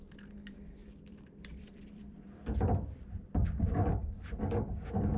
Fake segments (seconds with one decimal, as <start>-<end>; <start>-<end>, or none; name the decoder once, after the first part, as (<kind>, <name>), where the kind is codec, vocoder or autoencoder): 0.8-3.9 (vocoder, BigVGAN v2)